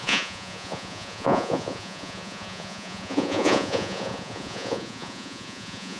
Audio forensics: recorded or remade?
remade